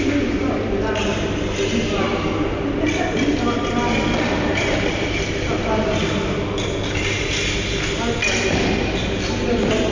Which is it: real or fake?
real